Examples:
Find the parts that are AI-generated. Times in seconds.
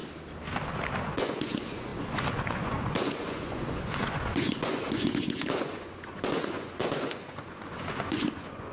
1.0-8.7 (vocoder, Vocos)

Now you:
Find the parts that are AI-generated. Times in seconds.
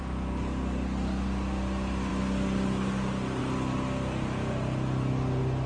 none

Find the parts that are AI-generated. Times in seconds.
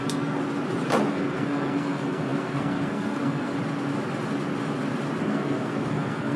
0.0-0.4 (codec, SNAC); 1.1-3.5; 5.2-6.4